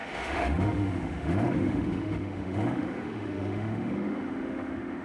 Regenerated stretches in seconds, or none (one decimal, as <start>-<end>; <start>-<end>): 0.0-5.0